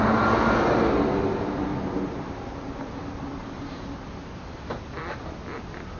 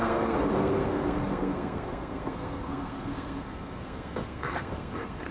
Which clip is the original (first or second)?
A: first